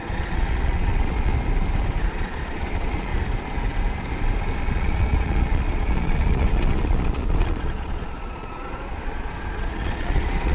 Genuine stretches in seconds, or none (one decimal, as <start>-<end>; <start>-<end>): 1.3-2.0; 3.1-4.7